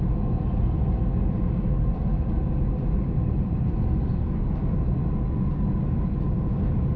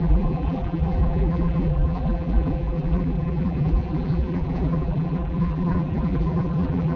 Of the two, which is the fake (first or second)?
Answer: second